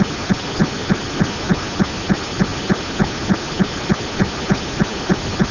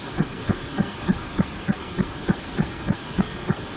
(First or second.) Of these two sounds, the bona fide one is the first